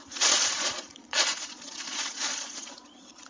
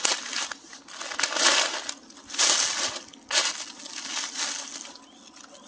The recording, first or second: second